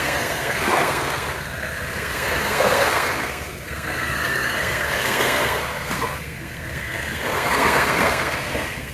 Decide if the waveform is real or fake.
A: fake